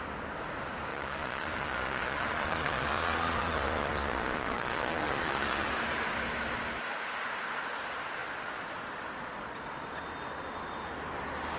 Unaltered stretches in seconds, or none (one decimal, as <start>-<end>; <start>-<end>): 0.0-0.9; 5.7-11.6